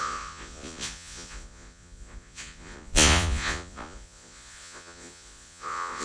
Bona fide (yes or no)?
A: no